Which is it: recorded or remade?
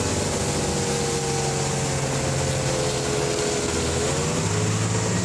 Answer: recorded